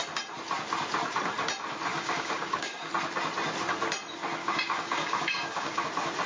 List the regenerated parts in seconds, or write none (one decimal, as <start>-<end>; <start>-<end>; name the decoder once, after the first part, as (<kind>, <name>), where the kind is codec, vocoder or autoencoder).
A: 1.9-2.9 (codec, DAC); 4.4-5.8